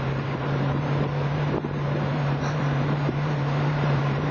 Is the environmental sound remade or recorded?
remade